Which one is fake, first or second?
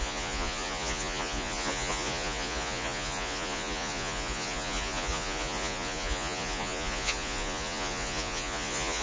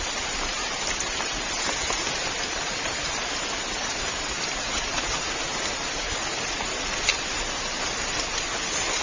first